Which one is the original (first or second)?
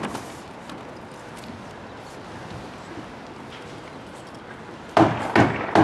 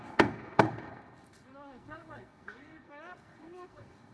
first